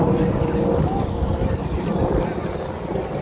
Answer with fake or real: real